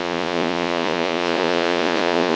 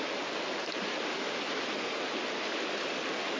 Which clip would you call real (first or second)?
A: second